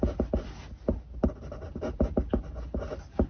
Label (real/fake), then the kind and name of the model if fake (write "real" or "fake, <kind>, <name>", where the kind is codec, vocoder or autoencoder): real